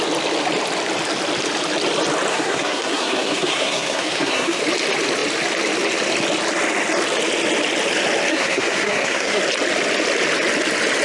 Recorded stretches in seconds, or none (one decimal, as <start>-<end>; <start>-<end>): 0.0-2.3; 4.6-8.3; 9.4-11.0